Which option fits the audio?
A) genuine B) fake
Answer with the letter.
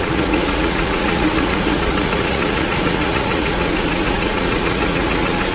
B